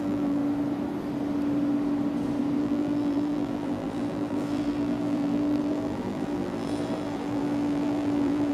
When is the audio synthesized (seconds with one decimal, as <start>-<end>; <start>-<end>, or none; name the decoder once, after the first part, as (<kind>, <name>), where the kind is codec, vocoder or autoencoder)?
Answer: 0.0-0.4 (vocoder, BigVGAN v2); 2.6-8.5